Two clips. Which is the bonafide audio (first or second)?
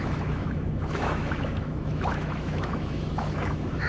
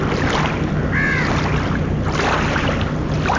second